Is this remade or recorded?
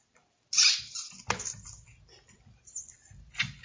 recorded